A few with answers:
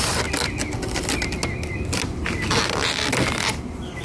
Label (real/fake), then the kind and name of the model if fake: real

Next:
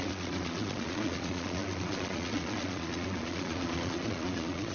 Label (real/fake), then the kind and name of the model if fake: fake, vocoder, Vocos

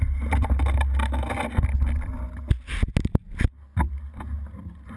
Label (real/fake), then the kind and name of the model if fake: real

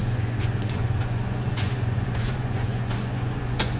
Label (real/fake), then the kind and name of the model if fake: fake, vocoder, Vocos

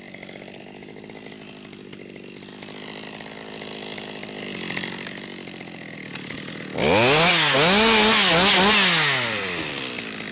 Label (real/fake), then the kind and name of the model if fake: real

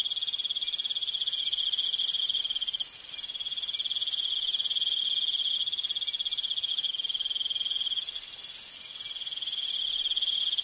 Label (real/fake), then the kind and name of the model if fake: real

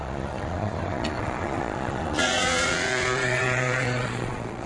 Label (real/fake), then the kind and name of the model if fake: fake, vocoder, Vocos